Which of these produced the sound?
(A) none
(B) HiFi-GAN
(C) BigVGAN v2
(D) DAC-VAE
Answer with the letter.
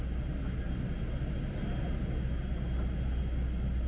A